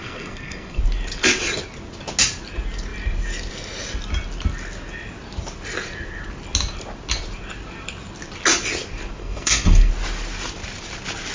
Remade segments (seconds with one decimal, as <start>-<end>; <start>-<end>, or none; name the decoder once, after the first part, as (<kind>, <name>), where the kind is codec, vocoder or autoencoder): 0.0-0.8 (codec, SNAC); 9.2-9.9